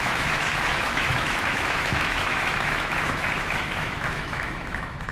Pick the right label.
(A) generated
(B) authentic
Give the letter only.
A